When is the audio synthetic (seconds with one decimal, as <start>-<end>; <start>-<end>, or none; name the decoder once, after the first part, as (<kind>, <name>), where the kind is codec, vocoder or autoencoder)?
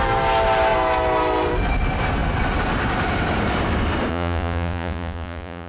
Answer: 4.1-5.7 (vocoder, Vocos)